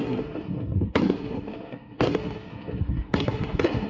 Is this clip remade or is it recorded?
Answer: remade